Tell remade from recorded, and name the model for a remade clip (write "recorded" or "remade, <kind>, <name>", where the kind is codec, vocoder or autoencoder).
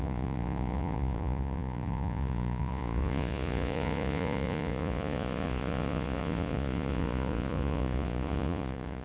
remade, vocoder, Vocos